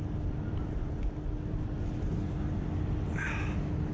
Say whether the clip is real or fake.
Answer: real